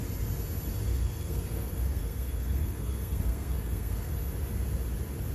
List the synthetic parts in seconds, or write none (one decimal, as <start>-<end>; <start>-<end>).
0.9-4.1